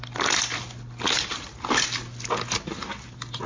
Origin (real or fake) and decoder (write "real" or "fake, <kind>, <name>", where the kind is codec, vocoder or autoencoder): real